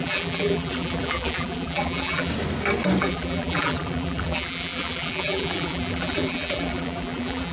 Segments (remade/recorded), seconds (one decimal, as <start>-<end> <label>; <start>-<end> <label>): 0.0-2.3 remade; 2.3-3.0 recorded; 3.0-7.5 remade